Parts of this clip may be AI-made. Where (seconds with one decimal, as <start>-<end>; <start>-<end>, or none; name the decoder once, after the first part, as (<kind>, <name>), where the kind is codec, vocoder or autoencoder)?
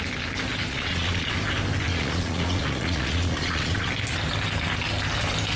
0.7-1.3 (vocoder, Vocos); 1.9-3.9